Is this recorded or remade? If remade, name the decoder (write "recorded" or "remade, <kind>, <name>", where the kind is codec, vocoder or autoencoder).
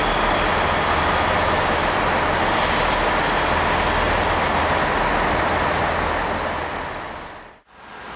recorded